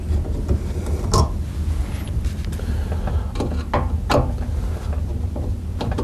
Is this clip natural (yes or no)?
yes